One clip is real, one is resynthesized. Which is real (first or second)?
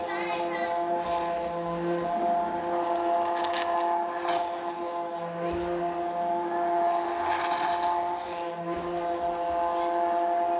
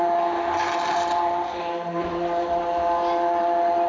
first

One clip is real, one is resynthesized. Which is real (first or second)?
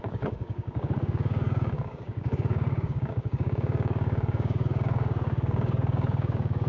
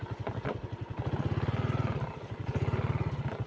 second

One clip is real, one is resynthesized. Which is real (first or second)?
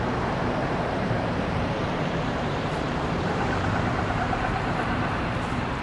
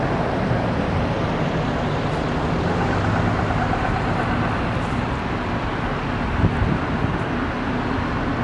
second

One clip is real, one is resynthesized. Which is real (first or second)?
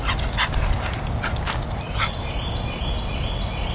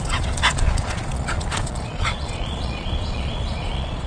first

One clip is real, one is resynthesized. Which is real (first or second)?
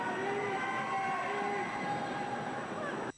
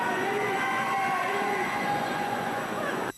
first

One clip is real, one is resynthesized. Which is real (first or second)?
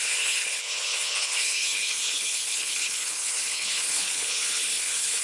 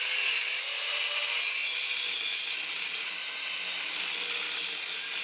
second